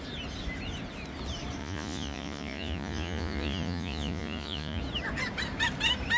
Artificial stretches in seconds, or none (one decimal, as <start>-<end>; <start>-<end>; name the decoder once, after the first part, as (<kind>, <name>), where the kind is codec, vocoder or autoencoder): 1.6-4.8 (vocoder, Vocos)